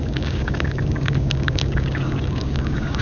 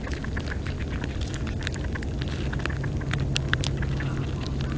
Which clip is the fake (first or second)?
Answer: first